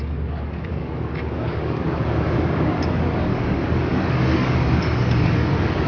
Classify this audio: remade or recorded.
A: remade